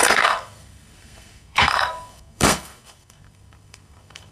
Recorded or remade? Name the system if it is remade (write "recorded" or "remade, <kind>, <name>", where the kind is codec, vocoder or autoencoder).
remade, codec, SNAC